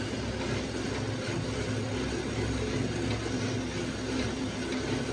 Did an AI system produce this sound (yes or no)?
no